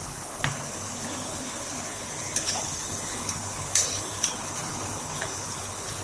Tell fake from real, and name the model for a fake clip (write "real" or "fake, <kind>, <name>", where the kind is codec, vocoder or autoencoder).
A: fake, codec, HILCodec